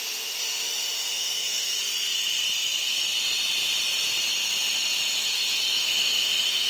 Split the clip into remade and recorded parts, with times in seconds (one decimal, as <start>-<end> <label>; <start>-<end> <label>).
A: 0.0-1.8 remade; 1.8-5.8 recorded; 5.8-6.7 remade